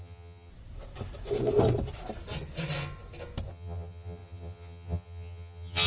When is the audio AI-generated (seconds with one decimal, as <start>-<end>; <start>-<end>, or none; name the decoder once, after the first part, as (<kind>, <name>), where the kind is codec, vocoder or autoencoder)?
0.0-0.5 (vocoder, HiFi-GAN); 3.5-5.9